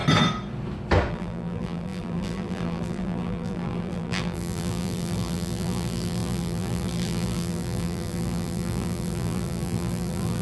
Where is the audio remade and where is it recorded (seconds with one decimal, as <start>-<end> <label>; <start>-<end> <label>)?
0.0-1.1 recorded; 1.1-10.4 remade